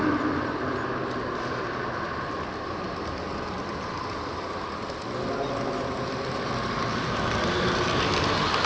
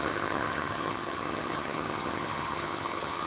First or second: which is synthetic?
second